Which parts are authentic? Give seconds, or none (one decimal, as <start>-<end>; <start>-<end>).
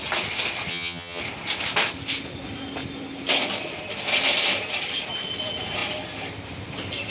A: 0.0-0.7; 1.2-7.1